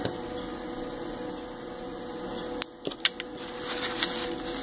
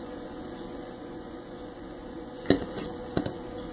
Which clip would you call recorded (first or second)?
first